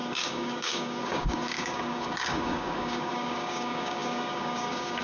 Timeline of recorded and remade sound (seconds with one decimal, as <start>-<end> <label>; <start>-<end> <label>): 0.0-5.0 remade